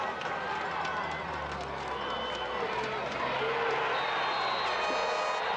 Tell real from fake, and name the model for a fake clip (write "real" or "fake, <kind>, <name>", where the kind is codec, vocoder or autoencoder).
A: real